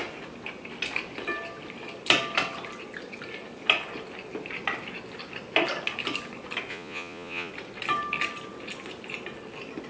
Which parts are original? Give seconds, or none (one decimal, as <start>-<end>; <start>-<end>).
0.0-6.7; 7.5-9.9